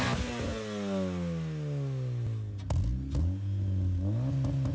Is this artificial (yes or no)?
no